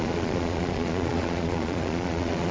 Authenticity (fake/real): fake